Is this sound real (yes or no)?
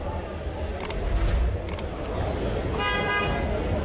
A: yes